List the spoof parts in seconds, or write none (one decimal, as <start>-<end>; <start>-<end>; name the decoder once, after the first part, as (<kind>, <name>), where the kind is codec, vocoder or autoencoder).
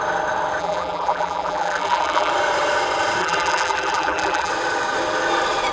0.6-2.3 (vocoder, BigVGAN v2); 3.2-4.5